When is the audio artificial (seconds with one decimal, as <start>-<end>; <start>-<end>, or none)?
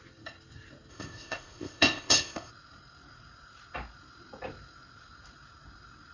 0.9-2.5